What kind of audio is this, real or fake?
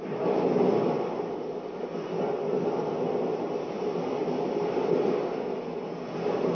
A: real